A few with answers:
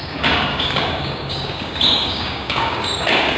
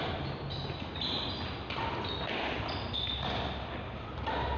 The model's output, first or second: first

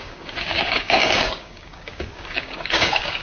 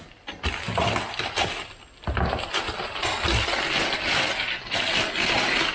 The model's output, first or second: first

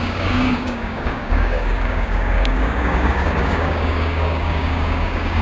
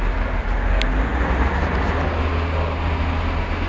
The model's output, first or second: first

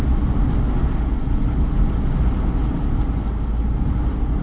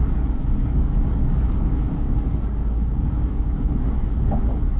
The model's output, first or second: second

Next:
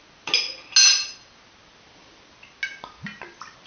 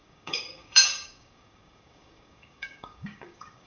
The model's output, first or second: second